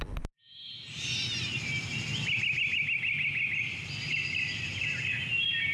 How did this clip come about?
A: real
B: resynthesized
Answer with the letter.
A